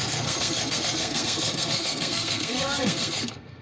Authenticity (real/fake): fake